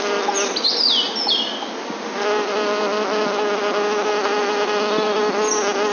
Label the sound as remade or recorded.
recorded